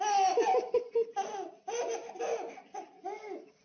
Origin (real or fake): real